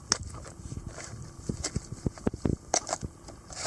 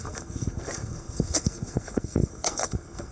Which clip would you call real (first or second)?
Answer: first